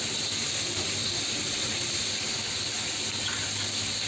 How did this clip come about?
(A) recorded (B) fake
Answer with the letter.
A